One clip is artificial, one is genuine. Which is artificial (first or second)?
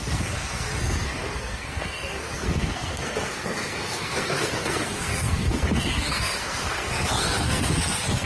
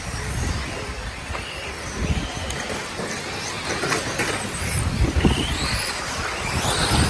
first